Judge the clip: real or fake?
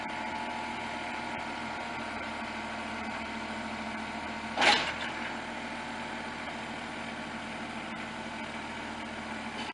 real